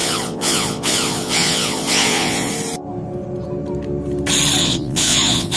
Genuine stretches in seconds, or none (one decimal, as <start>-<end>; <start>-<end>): 2.5-4.6